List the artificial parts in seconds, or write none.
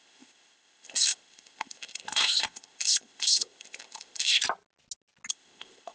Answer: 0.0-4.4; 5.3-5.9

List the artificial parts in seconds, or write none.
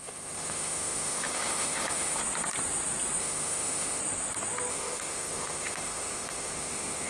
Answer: 0.0-2.2; 3.2-4.0; 4.7-7.1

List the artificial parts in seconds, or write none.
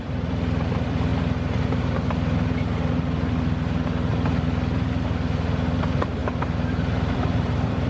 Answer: 0.0-1.1; 5.8-6.2; 7.1-7.9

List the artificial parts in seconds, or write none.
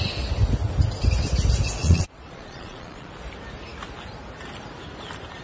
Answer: 1.8-3.1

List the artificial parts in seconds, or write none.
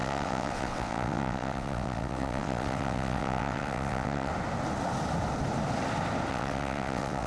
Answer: 0.0-4.3; 6.3-7.3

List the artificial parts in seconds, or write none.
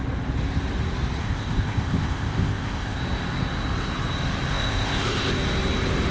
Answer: 1.2-3.0; 4.5-5.3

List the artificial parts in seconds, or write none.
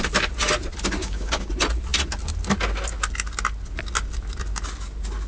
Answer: 1.0-1.5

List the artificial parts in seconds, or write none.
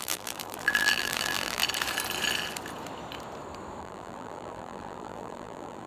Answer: 0.0-1.6; 3.8-5.9